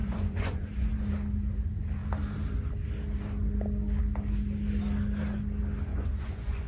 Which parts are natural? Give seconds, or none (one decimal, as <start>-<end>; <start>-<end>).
1.1-5.9